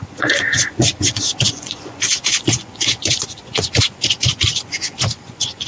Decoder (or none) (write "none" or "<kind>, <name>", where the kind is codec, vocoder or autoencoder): vocoder, Vocos